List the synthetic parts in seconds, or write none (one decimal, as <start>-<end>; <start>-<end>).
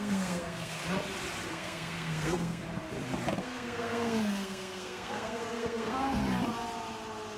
0.0-0.8; 1.5-2.6; 3.4-6.2